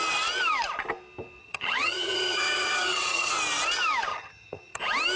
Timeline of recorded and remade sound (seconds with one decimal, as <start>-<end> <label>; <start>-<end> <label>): 0.0-1.4 recorded; 1.4-3.3 remade; 3.3-4.1 recorded; 4.1-4.8 remade; 4.8-5.2 recorded